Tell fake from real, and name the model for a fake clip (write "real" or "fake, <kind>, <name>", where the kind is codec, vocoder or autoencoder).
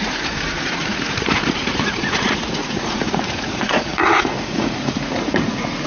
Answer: fake, vocoder, Vocos